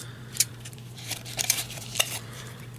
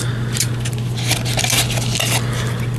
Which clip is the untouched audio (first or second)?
second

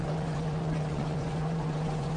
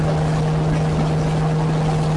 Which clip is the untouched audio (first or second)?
second